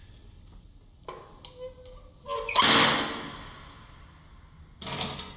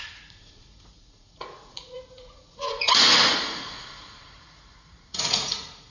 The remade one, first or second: second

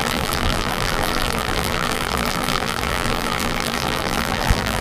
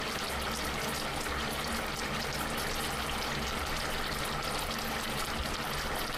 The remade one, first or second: first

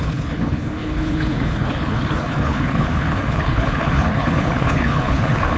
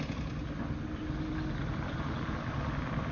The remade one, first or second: first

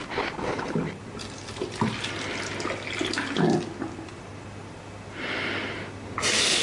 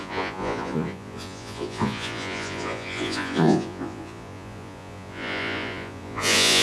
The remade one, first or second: second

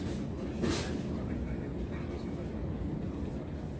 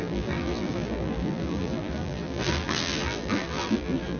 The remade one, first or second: second